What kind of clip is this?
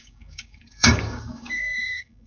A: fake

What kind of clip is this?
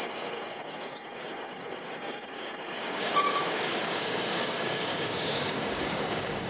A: fake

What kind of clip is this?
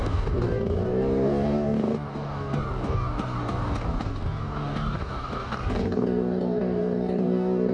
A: fake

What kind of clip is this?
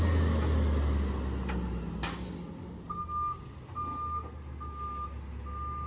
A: real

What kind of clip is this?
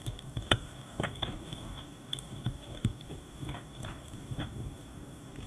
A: fake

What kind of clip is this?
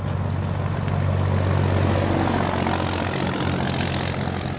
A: real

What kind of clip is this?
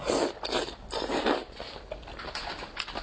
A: real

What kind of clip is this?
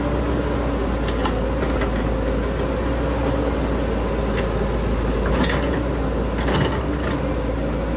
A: real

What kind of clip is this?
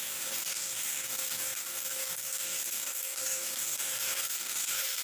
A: fake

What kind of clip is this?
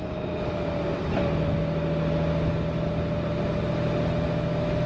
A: real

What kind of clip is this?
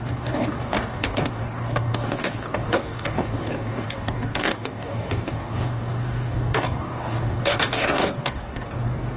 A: fake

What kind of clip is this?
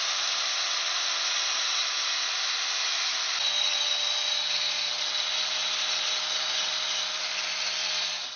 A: real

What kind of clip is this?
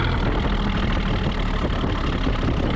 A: real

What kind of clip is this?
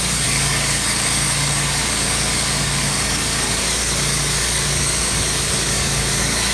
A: fake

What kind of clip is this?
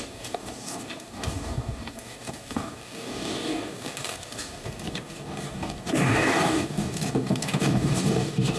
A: fake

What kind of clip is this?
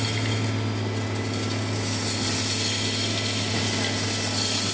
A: real